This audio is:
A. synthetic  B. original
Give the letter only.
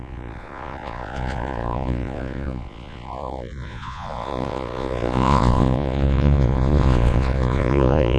A